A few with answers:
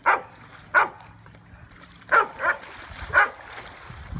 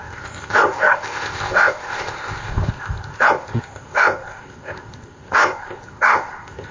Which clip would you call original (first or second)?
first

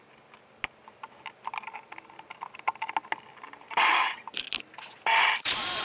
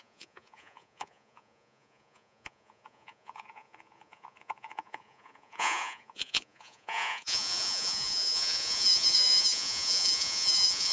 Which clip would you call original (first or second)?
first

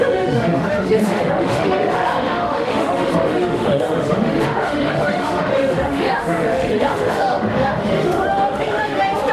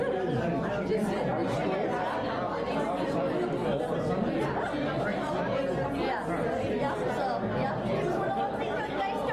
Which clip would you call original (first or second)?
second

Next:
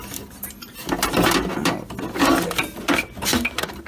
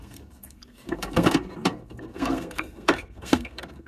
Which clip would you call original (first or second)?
first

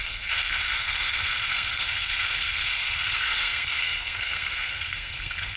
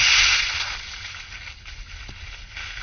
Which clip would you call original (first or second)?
second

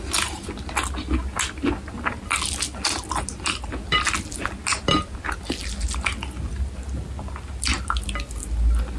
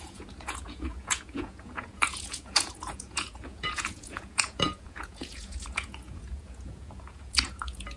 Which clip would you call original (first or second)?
first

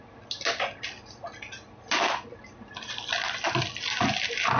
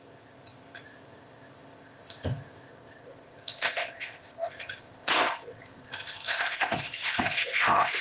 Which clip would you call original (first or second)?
first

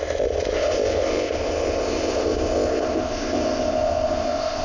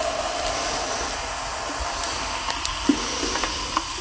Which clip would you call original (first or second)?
second